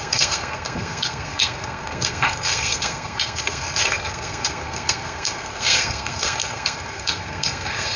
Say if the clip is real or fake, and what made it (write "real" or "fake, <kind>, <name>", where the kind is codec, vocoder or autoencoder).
fake, codec, SNAC